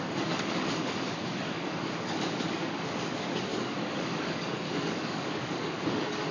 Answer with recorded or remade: remade